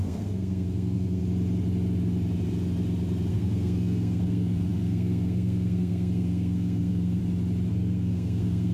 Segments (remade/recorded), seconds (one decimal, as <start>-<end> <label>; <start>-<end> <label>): 0.0-1.2 remade; 1.2-3.3 recorded; 3.3-7.2 remade; 7.2-7.7 recorded; 7.7-8.7 remade